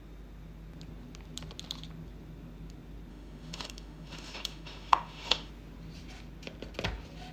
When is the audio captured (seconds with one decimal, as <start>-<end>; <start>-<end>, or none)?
0.0-3.1; 5.5-7.3